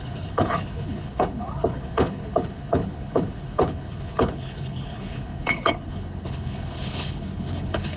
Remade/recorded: remade